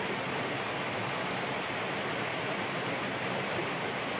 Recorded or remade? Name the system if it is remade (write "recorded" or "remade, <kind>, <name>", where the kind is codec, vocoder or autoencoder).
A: recorded